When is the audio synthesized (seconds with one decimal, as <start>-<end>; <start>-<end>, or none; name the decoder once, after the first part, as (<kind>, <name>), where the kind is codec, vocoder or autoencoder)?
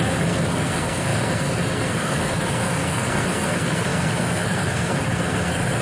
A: 0.0-5.8 (codec, SNAC)